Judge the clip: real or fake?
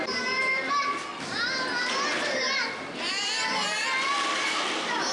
real